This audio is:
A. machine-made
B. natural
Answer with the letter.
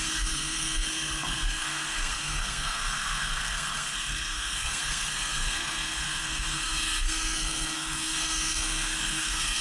A